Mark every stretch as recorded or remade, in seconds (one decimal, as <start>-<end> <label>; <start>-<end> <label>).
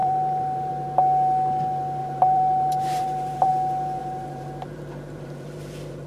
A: 0.0-0.7 remade; 0.7-2.0 recorded; 2.0-3.5 remade; 3.5-4.0 recorded; 4.0-6.1 remade